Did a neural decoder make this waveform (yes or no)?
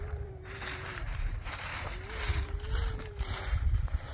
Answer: yes